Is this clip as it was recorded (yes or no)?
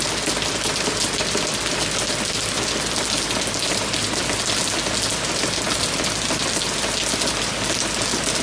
yes